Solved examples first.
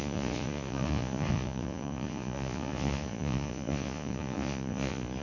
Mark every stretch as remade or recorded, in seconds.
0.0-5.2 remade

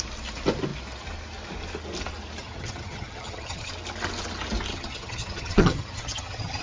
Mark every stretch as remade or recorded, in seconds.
0.0-2.4 recorded; 2.4-3.7 remade; 3.7-4.7 recorded; 4.7-6.6 remade

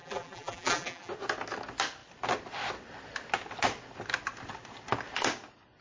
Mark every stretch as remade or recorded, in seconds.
0.0-1.1 remade; 1.1-5.8 recorded

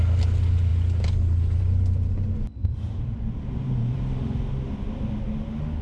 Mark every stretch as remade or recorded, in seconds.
0.0-2.6 recorded; 2.6-4.0 remade; 4.0-5.8 recorded

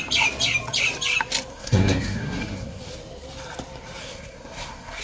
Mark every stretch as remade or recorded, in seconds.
0.0-1.5 recorded; 1.5-2.8 remade; 2.8-4.0 recorded; 4.0-5.0 remade

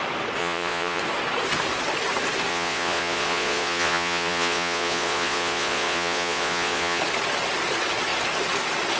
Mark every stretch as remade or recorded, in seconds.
0.0-0.4 recorded; 0.4-1.0 remade; 1.0-2.5 recorded; 2.5-7.0 remade; 7.0-9.0 recorded

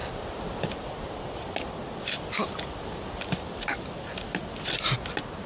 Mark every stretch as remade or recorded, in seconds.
0.0-3.3 remade; 3.3-5.5 recorded

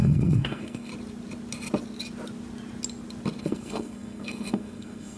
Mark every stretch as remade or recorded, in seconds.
0.0-0.9 remade; 0.9-3.4 recorded; 3.4-5.2 remade